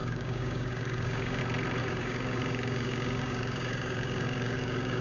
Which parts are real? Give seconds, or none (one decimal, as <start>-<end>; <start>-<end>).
1.4-1.8

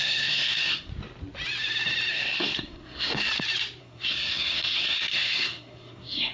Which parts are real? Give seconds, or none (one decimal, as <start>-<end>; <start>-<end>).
0.9-2.1; 3.3-3.8

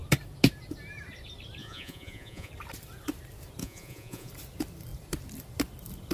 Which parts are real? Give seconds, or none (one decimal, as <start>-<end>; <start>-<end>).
0.0-1.6; 2.5-3.6; 4.3-6.1

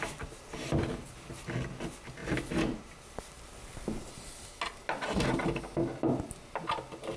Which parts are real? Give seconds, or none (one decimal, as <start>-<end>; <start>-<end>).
0.0-7.2

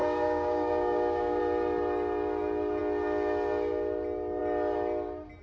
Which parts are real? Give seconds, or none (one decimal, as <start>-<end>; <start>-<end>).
1.4-5.4

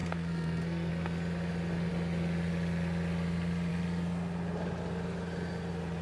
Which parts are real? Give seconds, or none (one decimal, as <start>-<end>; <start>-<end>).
0.9-6.0

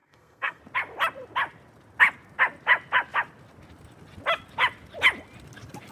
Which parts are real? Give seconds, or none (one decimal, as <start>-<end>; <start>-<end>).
0.6-5.9